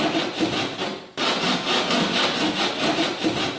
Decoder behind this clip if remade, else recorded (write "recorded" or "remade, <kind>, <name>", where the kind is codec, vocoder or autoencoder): recorded